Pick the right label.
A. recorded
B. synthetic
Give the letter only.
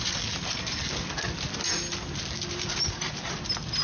A